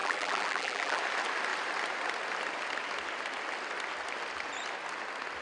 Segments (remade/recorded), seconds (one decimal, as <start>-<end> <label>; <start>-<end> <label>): 0.0-1.0 remade; 1.0-5.4 recorded